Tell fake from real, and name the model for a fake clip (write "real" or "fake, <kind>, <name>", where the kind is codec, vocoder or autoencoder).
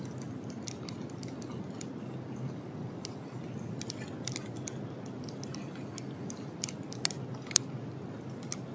real